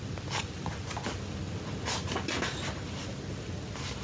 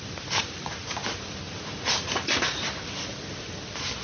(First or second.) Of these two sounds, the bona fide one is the first